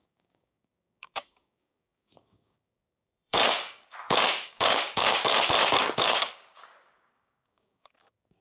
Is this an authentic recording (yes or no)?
no